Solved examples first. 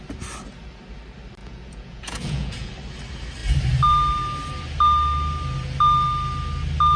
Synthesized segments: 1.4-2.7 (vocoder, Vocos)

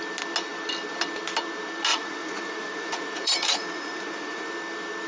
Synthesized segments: 1.9-4.5 (vocoder, Vocos)

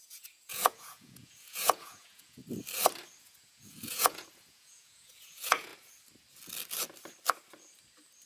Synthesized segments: 0.0-2.4 (vocoder, Vocos); 3.2-5.7